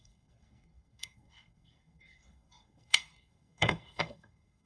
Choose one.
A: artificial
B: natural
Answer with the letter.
A